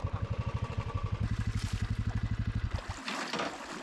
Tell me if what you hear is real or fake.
real